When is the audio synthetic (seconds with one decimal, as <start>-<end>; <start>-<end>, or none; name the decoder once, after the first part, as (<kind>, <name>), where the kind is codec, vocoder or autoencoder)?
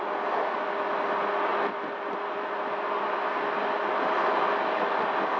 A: none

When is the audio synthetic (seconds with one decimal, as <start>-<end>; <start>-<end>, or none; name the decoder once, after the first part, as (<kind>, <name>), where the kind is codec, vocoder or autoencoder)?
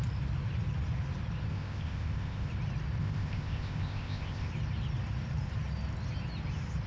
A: 1.5-2.5 (codec, ZipCodec); 3.0-4.5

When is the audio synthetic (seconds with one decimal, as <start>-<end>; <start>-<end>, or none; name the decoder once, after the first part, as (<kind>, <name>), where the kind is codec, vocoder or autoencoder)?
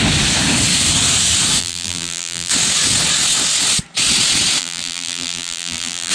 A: 1.6-2.5 (vocoder, BigVGAN v2); 4.6-6.1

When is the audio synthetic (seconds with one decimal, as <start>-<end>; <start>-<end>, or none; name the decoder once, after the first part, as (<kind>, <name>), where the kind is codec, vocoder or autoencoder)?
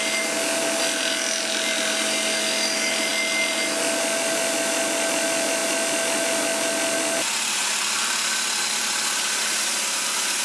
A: none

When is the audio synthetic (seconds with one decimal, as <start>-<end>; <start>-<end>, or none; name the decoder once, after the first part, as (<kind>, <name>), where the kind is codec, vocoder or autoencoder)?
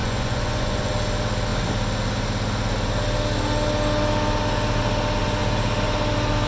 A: 0.0-0.9 (vocoder, Vocos)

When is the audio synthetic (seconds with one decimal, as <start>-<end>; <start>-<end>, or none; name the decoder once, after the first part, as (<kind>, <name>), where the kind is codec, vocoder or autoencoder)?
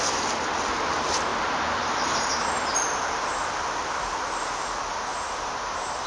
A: 1.3-2.7 (vocoder, BigVGAN v2); 5.1-6.1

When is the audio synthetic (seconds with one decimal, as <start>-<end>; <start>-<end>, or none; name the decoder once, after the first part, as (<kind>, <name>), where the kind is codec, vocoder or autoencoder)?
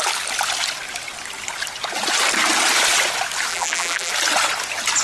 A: 3.5-4.1 (vocoder, BigVGAN v2)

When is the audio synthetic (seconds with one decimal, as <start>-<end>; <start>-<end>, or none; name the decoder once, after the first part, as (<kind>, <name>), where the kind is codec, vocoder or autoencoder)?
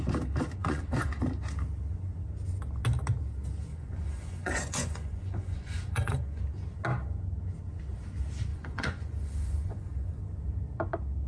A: 0.6-1.2 (vocoder, Vocos); 3.7-6.4; 8.5-10.2